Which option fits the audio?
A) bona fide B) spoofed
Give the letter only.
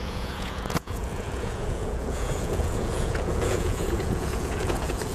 B